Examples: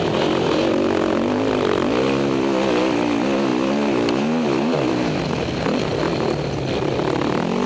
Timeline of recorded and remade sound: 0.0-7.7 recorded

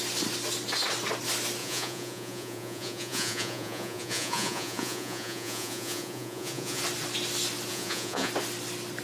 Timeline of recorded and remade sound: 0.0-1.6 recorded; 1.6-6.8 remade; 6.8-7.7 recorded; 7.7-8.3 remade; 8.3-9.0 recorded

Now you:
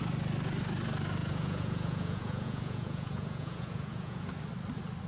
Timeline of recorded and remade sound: 0.0-1.2 recorded; 1.2-4.3 remade; 4.3-5.1 recorded

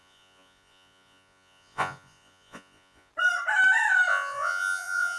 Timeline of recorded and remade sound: 0.0-3.1 remade; 3.1-4.1 recorded; 4.1-5.2 remade

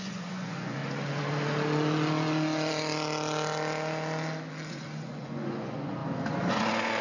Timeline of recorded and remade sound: 0.0-0.8 remade; 0.8-4.7 recorded; 4.7-6.0 remade; 6.0-6.5 recorded; 6.5-7.0 remade